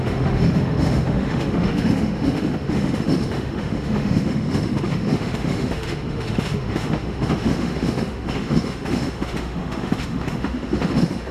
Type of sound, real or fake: fake